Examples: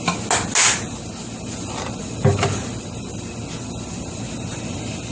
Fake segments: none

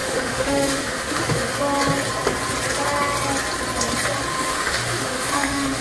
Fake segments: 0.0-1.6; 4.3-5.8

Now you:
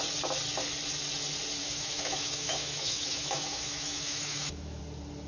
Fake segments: 1.6-4.8

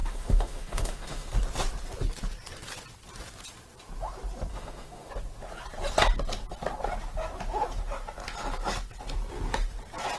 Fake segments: 0.0-1.3; 4.5-5.1

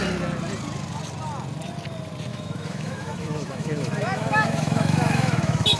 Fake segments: 2.3-5.8